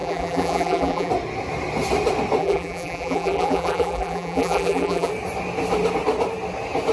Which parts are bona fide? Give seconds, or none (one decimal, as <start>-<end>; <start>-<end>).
1.1-2.4; 5.1-6.9